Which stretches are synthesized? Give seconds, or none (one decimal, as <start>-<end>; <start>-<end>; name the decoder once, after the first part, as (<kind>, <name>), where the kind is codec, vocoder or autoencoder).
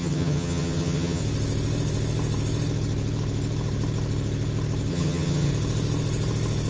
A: 0.0-1.2 (vocoder, HiFi-GAN); 4.9-5.5